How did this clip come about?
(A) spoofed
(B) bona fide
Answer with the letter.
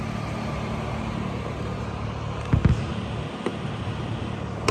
B